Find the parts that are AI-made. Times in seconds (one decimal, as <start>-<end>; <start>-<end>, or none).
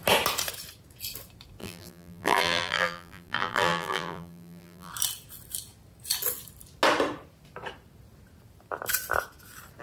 1.6-4.9